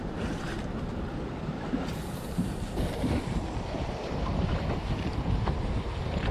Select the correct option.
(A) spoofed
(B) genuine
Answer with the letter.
A